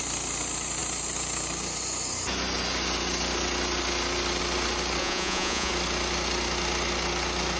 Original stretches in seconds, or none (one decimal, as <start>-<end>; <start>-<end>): 0.0-5.0; 5.7-7.6